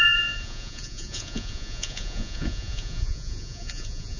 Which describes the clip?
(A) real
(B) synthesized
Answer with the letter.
B